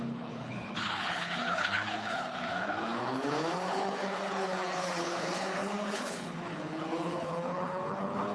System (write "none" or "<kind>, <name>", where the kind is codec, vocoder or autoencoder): codec, HILCodec